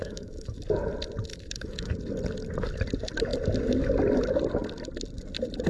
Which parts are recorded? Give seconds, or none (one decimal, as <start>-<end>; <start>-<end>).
0.6-1.3; 1.9-5.7